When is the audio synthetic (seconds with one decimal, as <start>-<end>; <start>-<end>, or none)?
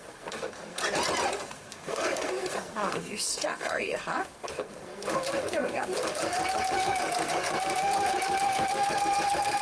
0.0-0.8; 1.4-9.6